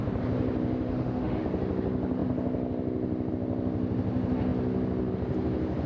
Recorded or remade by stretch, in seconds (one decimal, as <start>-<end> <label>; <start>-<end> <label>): 0.0-0.9 recorded; 0.9-1.4 remade; 1.4-5.9 recorded